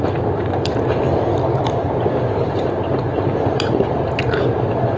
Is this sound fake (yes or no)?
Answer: yes